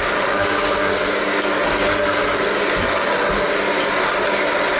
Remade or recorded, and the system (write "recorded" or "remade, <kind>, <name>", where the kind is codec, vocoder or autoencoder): recorded